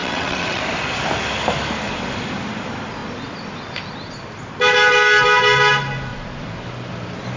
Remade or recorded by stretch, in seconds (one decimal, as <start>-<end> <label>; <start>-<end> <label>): 0.0-0.6 remade; 0.6-7.4 recorded